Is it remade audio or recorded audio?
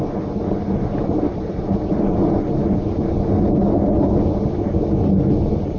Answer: recorded